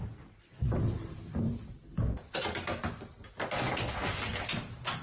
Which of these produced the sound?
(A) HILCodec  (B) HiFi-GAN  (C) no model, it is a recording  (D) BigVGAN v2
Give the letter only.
C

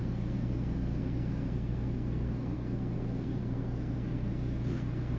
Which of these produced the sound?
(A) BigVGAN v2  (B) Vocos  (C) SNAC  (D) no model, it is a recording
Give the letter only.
C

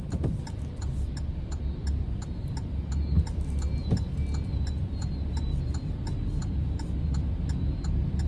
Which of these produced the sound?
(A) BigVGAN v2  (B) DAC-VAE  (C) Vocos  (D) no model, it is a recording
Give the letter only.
D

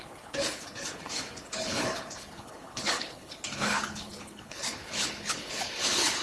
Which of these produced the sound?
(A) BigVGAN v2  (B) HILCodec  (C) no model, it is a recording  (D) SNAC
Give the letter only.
B